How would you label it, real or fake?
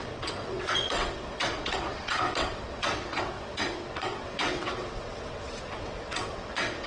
fake